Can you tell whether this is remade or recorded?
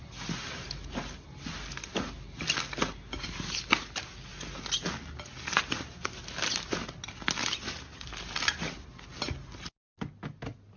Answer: recorded